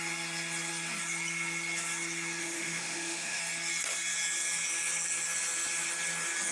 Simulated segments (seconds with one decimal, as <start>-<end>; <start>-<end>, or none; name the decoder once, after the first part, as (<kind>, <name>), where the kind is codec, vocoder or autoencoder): 2.4-3.4 (autoencoder, DAC-VAE)